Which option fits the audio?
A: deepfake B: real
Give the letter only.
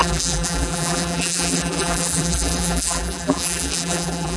A